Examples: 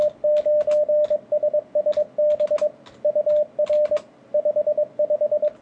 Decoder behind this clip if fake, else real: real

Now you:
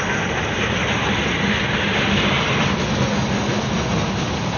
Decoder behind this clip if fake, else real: real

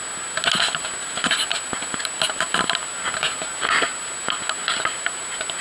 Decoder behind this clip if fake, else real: real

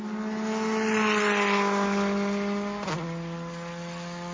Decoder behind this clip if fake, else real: real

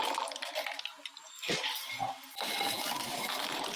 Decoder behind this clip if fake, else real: real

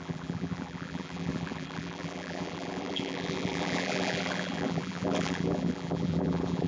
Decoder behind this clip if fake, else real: fake, vocoder, BigVGAN v2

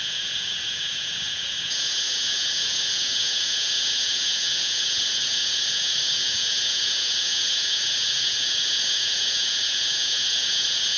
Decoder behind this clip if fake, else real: fake, vocoder, Vocos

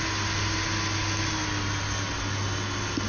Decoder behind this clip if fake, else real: real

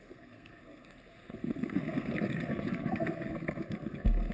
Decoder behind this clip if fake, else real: fake, codec, SNAC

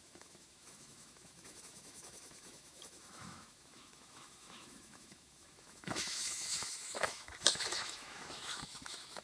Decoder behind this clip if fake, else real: fake, autoencoder, DAC-VAE